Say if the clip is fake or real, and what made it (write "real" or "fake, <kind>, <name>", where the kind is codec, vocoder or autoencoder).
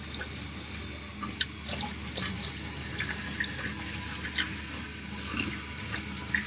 real